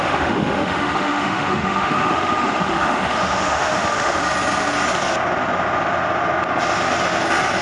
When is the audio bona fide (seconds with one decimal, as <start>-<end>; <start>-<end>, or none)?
4.2-7.6